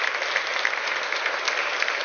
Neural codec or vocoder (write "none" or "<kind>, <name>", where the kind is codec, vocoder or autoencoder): none